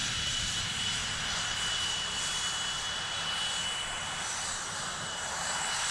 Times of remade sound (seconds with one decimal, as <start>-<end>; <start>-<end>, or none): 0.5-1.0; 4.5-5.9